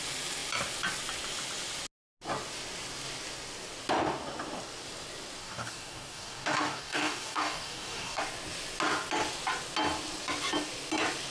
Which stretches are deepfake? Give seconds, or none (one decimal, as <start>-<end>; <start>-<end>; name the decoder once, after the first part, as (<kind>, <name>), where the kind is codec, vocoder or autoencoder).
5.4-8.2 (codec, DAC)